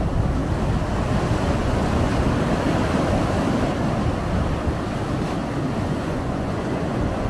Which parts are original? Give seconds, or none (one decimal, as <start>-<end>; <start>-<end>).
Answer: 0.0-1.6; 2.1-5.8